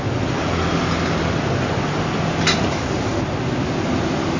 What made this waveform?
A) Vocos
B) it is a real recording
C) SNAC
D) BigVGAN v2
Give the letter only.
B